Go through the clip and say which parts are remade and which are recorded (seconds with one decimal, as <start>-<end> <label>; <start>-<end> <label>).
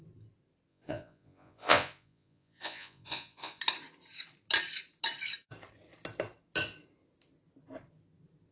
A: 0.0-0.7 recorded; 0.7-3.6 remade; 3.6-8.5 recorded